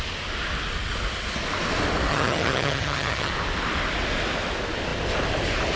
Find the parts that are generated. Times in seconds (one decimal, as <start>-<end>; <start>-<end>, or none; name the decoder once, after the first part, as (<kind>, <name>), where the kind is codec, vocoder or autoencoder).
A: 2.1-3.3 (vocoder, HiFi-GAN)